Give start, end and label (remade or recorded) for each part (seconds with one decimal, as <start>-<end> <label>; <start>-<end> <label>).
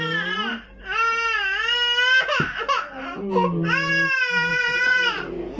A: 0.0-4.5 recorded; 4.5-5.1 remade; 5.1-5.6 recorded